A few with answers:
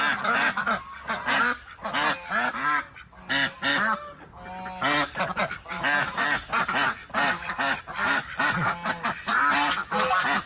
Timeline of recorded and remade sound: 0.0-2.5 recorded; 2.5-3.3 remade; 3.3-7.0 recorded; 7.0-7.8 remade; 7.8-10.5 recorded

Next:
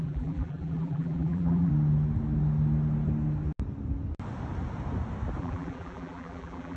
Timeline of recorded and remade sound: 0.0-1.7 remade; 1.7-5.4 recorded; 5.4-6.8 remade

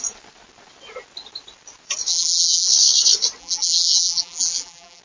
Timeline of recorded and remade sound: 0.0-2.1 recorded; 2.1-2.7 remade; 2.7-3.4 recorded; 3.4-5.0 remade

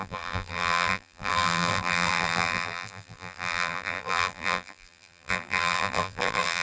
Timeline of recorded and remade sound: 0.0-6.6 remade

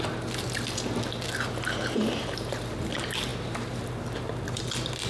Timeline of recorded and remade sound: 0.0-2.0 recorded; 2.0-2.7 remade; 2.7-5.1 recorded

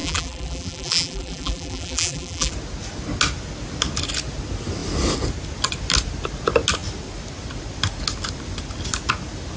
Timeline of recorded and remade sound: 0.0-2.5 remade; 2.5-9.6 recorded

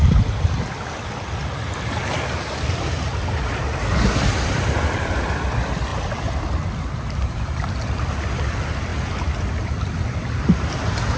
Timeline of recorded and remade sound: 0.0-1.4 remade; 1.4-4.8 recorded; 4.8-8.9 remade; 8.9-9.6 recorded; 9.6-11.2 remade